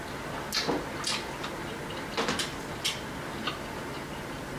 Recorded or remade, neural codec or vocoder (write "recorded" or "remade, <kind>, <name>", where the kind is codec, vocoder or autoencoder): recorded